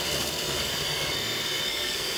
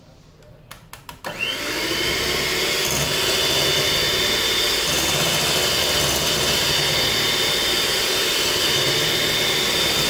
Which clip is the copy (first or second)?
first